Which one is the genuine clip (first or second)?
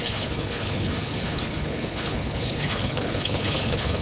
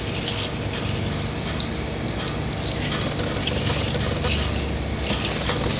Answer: second